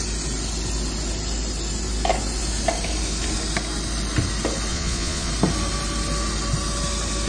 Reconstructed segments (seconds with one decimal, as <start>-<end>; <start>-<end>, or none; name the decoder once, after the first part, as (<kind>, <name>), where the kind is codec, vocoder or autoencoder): 4.7-5.3 (vocoder, Vocos)